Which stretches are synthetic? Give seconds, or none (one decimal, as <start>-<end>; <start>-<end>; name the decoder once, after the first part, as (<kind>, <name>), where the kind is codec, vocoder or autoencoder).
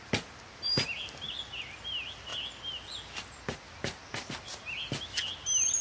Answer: none